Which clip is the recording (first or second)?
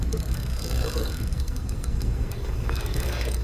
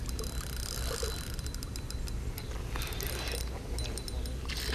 second